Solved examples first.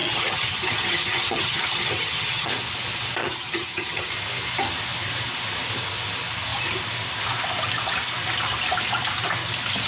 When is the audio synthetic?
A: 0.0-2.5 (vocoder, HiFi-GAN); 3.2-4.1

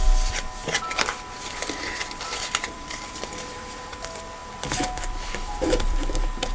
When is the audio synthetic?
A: 0.0-0.6 (vocoder, BigVGAN v2); 2.2-4.4; 5.0-6.5

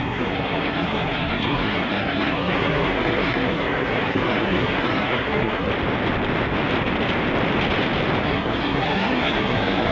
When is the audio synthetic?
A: 0.0-5.7 (codec, SNAC); 8.2-9.9